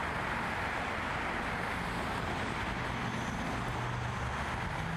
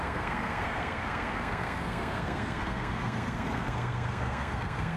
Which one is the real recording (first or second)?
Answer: first